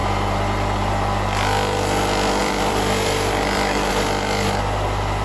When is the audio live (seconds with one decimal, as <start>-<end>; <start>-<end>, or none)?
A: 0.0-2.4; 3.9-5.2